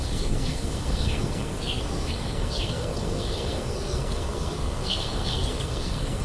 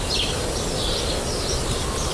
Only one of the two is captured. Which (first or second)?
second